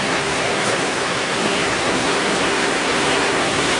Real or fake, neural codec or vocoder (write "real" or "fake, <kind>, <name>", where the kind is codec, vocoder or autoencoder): fake, codec, SNAC